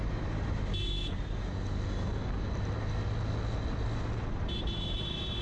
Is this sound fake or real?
real